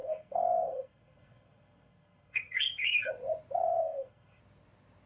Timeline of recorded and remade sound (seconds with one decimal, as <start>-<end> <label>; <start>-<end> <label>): 0.0-3.1 remade; 3.1-3.6 recorded; 3.6-4.4 remade; 4.4-5.1 recorded